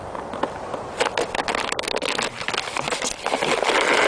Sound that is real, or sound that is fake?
real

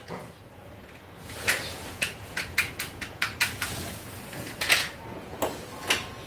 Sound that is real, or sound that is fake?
fake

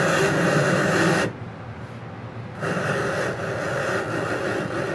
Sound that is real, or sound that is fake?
real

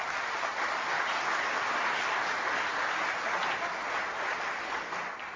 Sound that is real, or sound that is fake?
real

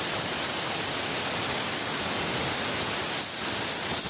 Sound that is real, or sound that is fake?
real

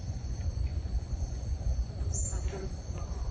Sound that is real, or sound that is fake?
fake